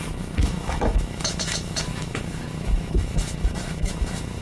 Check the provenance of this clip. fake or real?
fake